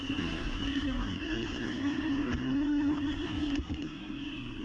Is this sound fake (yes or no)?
yes